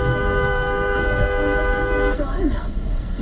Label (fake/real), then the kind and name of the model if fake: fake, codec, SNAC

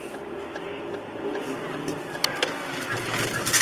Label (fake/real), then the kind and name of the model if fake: real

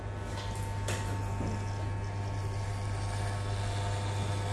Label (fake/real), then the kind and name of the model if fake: real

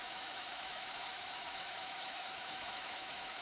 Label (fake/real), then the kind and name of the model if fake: fake, autoencoder, DAC-VAE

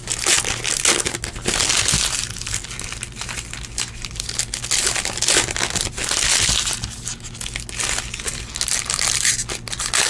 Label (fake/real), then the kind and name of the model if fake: real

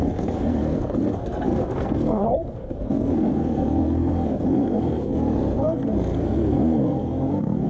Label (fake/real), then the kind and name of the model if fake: fake, codec, SNAC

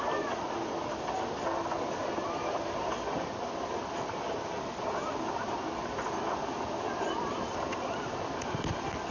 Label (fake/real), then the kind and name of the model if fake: real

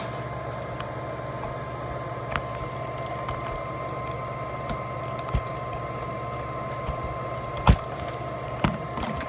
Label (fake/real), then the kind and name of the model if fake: real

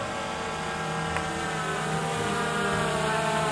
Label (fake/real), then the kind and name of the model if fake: real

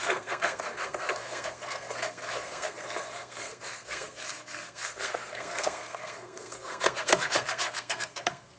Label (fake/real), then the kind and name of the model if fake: fake, codec, SNAC